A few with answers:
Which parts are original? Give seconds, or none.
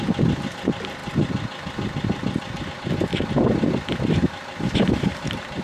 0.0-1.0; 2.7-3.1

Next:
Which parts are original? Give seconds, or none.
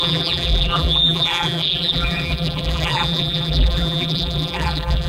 none